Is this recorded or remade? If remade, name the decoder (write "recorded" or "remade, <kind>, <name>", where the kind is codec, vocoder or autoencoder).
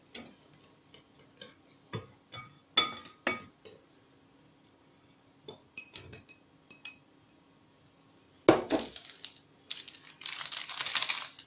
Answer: recorded